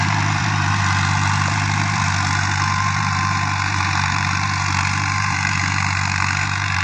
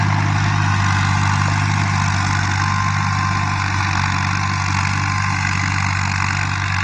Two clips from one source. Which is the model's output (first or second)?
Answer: first